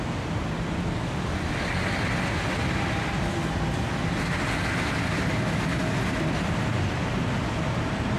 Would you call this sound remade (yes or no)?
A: no